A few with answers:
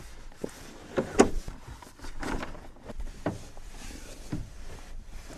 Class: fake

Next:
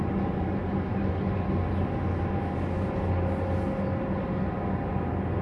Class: real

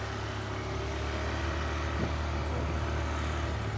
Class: real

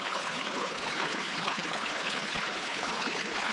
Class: fake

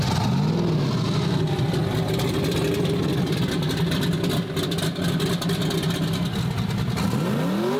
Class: real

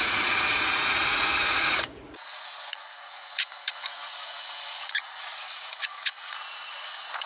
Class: fake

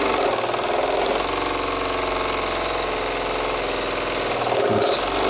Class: real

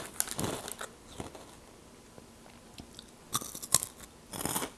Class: real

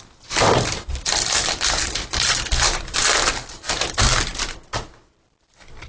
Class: real